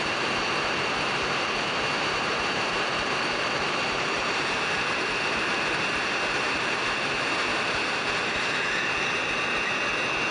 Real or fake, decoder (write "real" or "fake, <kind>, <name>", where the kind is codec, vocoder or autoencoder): fake, vocoder, BigVGAN v2